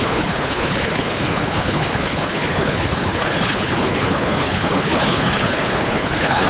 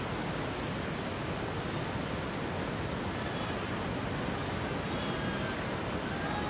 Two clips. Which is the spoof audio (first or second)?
first